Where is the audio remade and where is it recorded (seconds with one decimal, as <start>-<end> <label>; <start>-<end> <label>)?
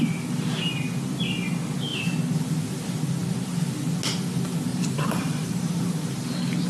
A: 0.0-4.7 recorded; 4.7-5.6 remade; 5.6-6.7 recorded